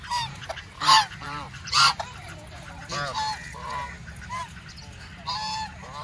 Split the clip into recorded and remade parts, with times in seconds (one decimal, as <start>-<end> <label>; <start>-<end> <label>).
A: 0.0-0.5 recorded; 0.5-2.2 remade; 2.2-6.0 recorded